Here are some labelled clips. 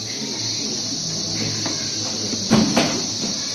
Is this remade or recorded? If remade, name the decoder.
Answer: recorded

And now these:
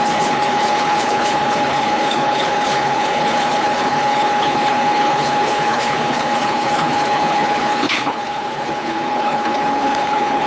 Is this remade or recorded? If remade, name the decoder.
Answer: remade, codec, HILCodec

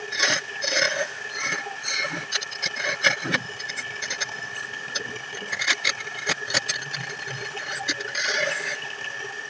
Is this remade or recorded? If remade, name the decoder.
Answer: recorded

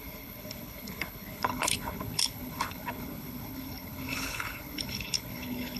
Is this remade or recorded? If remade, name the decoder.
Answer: remade, codec, HILCodec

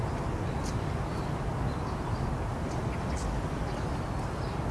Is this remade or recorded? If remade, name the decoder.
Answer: recorded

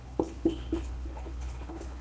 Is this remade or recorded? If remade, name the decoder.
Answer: remade, codec, HILCodec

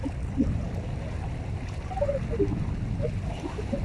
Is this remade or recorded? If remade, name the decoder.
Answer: recorded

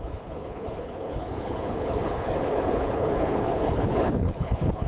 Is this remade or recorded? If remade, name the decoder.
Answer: remade, codec, HILCodec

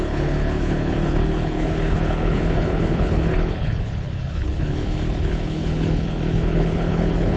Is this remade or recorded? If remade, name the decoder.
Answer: remade, codec, HILCodec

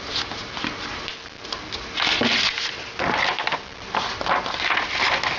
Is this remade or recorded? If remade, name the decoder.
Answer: recorded